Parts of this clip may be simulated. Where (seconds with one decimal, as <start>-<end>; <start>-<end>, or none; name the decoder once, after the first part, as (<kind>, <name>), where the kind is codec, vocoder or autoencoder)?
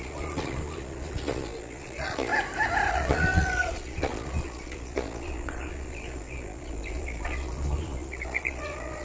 0.0-2.3 (vocoder, Vocos); 2.9-9.0